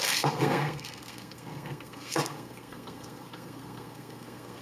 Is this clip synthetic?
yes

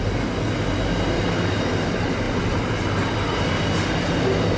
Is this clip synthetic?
no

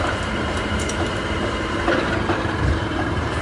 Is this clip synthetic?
yes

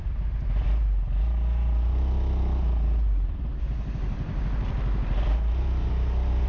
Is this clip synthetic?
no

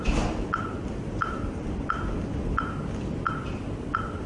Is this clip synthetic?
no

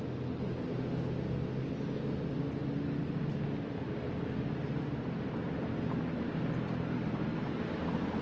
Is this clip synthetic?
no